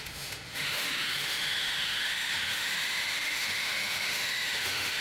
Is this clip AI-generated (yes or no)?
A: yes